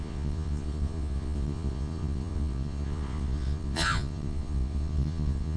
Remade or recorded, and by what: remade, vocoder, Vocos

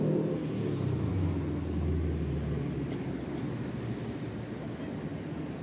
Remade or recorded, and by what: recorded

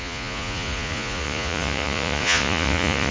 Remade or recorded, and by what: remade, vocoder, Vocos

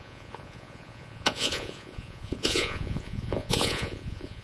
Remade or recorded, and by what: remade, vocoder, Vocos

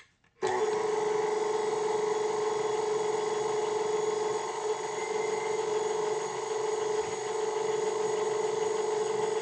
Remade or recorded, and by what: recorded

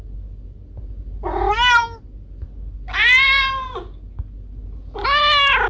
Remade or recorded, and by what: recorded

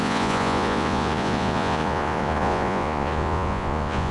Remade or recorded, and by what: remade, vocoder, Vocos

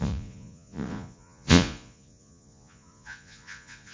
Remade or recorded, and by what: remade, vocoder, Vocos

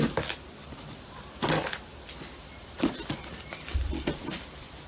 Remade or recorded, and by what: recorded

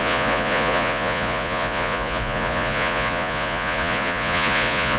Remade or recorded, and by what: remade, vocoder, Vocos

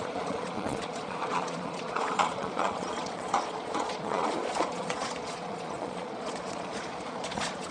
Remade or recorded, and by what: remade, vocoder, Vocos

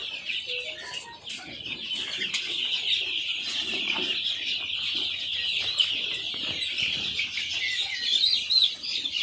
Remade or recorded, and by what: recorded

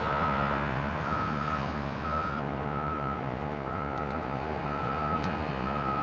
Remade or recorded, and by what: remade, vocoder, Vocos